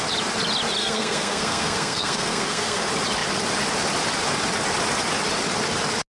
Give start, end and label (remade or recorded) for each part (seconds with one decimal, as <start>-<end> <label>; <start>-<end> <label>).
0.0-0.8 recorded; 0.8-2.8 remade; 2.8-6.1 recorded